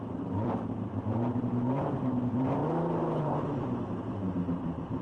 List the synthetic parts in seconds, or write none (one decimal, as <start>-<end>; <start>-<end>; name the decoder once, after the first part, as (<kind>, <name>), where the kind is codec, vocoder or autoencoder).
0.0-2.6 (vocoder, BigVGAN v2); 3.2-5.0

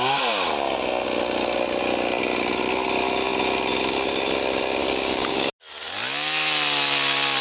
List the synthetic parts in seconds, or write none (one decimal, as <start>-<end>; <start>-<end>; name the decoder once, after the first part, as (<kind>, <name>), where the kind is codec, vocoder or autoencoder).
4.8-5.5 (codec, DAC)

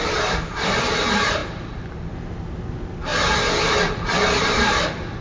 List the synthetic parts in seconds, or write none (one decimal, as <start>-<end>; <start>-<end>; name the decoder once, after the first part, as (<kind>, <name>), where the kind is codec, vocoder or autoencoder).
0.0-3.1 (vocoder, BigVGAN v2); 3.8-5.2